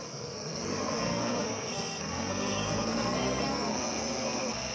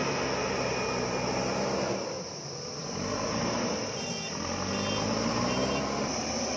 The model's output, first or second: first